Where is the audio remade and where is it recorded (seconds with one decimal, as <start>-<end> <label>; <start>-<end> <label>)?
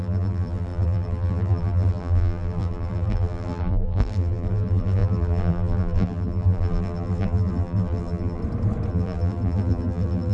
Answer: 0.0-8.4 remade; 8.4-8.9 recorded; 8.9-10.3 remade